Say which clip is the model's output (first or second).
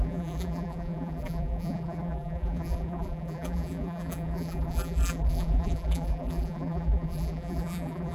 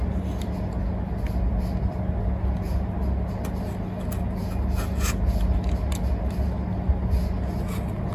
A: first